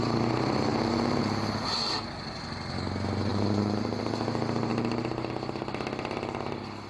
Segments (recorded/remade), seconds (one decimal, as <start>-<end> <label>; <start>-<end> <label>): 0.0-0.7 recorded; 0.7-1.7 remade; 1.7-3.3 recorded; 3.3-4.0 remade; 4.0-4.7 recorded; 4.7-5.3 remade; 5.3-6.9 recorded